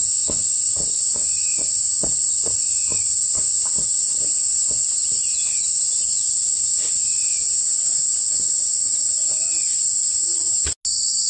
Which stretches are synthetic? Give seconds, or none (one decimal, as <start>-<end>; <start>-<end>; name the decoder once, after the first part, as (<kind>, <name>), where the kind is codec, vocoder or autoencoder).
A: none